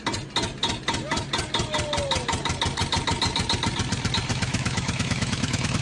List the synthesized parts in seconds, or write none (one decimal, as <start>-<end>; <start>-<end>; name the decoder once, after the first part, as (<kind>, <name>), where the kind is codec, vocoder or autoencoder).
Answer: 4.3-5.8 (autoencoder, DAC-VAE)